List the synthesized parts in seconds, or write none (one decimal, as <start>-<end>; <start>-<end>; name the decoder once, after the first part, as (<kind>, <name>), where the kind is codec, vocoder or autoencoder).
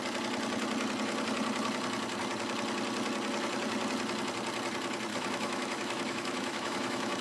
5.1-7.2 (autoencoder, DAC-VAE)